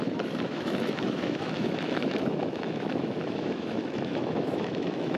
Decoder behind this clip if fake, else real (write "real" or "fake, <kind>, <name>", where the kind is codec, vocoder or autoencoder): fake, autoencoder, DAC-VAE